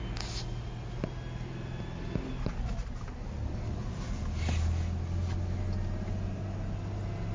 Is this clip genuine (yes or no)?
yes